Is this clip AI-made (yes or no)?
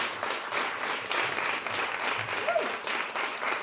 no